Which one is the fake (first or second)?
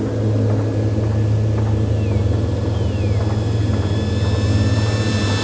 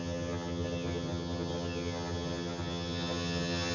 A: second